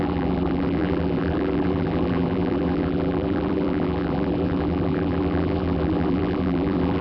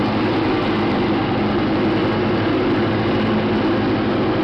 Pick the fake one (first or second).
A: first